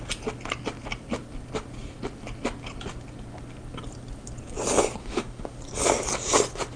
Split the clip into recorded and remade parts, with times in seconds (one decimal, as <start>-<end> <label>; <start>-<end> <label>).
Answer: 0.0-5.0 recorded; 5.0-5.6 remade; 5.6-6.8 recorded